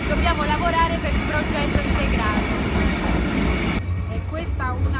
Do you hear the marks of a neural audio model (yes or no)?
no